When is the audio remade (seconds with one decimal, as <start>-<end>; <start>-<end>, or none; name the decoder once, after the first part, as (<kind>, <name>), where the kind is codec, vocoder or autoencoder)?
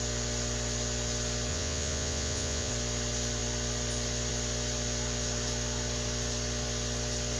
1.5-2.7 (vocoder, Vocos)